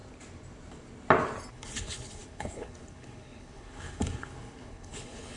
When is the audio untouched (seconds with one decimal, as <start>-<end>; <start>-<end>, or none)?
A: 0.0-1.5